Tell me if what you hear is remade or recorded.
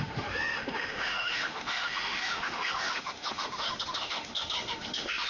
remade